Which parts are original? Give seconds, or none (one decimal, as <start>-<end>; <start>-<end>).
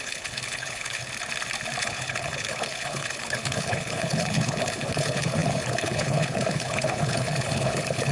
1.0-1.8